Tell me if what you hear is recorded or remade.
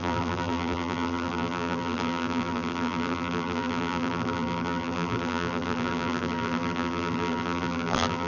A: remade